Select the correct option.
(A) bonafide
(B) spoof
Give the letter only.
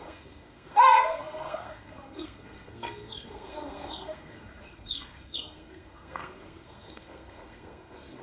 B